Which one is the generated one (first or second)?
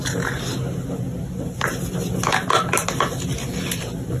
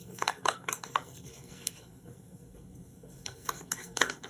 second